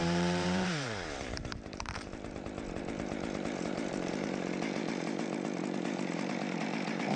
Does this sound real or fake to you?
fake